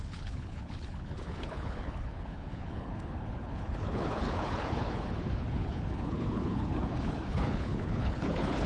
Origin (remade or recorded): remade